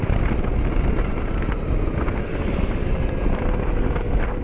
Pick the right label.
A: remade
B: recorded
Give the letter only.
B